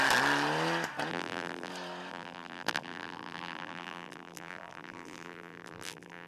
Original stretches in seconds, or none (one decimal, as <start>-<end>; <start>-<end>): 0.0-1.1; 1.7-2.1